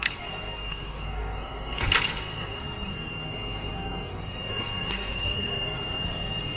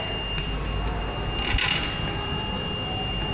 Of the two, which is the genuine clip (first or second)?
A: second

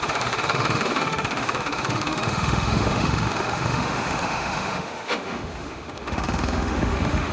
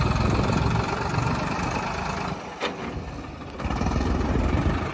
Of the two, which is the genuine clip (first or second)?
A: second